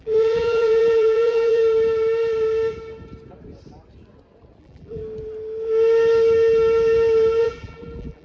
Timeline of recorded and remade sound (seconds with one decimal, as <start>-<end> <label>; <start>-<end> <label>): 0.0-1.6 remade; 1.6-4.6 recorded; 4.6-5.0 remade; 5.0-7.4 recorded; 7.4-8.2 remade